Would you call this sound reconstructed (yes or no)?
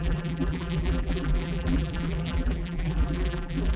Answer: yes